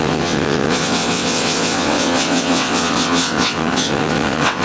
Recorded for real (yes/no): no